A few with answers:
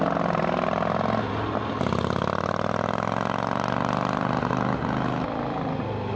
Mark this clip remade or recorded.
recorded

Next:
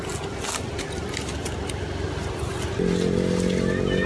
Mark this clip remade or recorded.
recorded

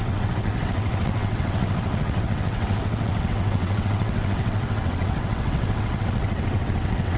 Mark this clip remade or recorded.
remade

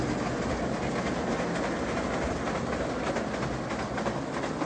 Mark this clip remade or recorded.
recorded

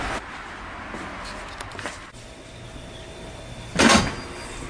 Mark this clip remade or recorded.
recorded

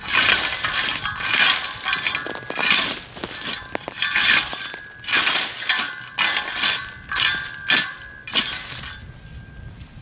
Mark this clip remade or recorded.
recorded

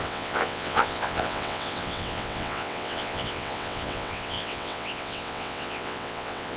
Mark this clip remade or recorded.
remade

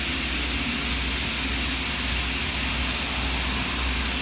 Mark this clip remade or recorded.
recorded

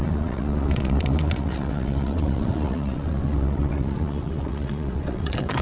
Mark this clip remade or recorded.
remade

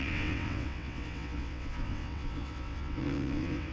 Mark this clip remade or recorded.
remade